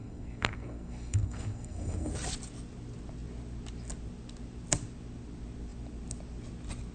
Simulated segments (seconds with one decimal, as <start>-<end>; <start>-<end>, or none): 0.0-2.1